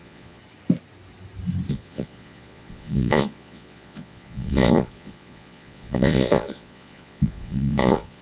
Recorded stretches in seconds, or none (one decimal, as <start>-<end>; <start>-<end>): 0.4-1.7